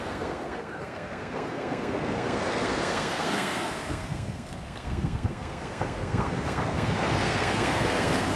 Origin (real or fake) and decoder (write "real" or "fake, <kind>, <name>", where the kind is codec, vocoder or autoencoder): fake, codec, SNAC